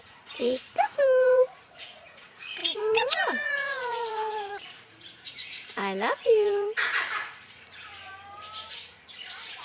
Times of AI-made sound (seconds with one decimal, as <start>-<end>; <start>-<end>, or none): 0.0-7.9; 8.7-9.6